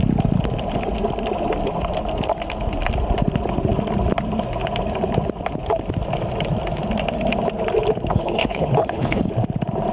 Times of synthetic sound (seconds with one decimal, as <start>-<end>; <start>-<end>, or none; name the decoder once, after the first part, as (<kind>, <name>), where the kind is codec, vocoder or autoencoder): 8.1-9.3 (codec, HILCodec)

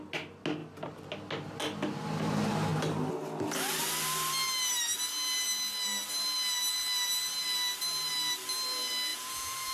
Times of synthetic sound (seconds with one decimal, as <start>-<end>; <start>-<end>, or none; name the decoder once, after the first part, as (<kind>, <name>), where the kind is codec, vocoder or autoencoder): 9.1-9.7 (vocoder, Vocos)

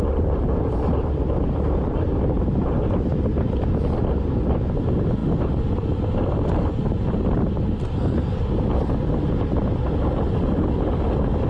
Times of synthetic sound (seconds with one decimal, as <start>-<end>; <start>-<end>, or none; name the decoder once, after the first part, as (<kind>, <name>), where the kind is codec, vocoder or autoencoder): none

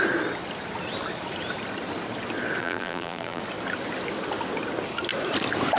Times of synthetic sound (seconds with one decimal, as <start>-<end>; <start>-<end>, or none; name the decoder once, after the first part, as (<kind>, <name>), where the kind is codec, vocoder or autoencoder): 2.6-3.4 (vocoder, BigVGAN v2)